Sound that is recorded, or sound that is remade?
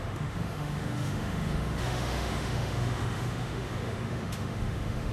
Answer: remade